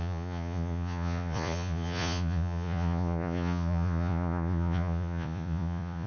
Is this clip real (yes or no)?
no